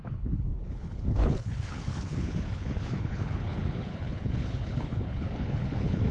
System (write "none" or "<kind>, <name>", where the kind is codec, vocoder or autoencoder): codec, HILCodec